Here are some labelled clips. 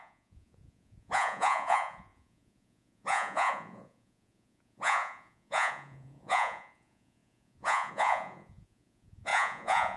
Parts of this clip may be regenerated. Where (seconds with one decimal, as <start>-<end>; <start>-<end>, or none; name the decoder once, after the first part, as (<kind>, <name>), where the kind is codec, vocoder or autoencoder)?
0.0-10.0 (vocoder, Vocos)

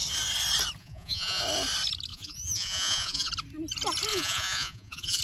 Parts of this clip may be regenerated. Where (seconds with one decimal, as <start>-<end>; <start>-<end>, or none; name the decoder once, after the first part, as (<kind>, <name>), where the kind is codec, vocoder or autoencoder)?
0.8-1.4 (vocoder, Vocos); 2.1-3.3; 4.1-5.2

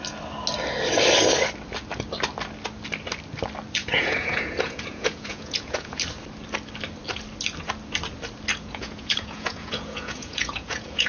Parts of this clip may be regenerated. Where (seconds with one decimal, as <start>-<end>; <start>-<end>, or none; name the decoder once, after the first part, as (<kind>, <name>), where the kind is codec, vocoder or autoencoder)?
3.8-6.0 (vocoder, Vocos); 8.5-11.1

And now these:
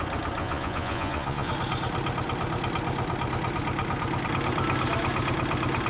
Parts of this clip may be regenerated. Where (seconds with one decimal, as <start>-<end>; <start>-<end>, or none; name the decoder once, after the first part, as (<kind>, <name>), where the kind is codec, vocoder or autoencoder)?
0.4-1.5 (vocoder, Vocos)

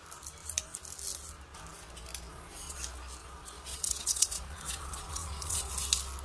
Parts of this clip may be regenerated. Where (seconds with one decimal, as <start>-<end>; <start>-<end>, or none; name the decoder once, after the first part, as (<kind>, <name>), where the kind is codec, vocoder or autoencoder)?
2.3-2.8 (vocoder, Vocos); 3.2-5.7

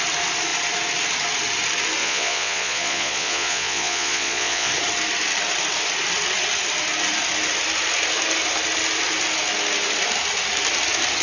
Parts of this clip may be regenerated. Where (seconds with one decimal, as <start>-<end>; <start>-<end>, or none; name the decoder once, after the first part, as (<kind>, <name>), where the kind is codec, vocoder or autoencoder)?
2.0-4.7 (vocoder, Vocos)